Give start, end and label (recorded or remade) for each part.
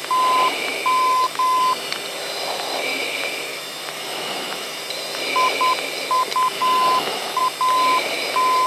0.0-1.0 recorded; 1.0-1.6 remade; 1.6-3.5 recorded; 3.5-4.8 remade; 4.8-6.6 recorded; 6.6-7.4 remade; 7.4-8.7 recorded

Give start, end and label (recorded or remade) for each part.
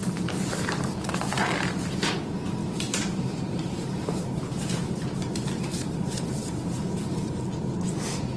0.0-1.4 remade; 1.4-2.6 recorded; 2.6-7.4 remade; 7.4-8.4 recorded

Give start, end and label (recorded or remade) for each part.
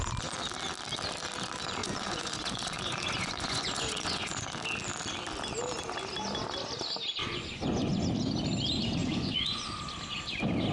0.0-1.8 recorded; 1.8-4.4 remade; 4.4-7.2 recorded; 7.2-8.0 remade; 8.0-9.0 recorded; 9.0-9.7 remade; 9.7-10.7 recorded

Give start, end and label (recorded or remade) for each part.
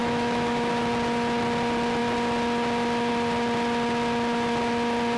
0.0-0.7 remade; 0.7-5.2 recorded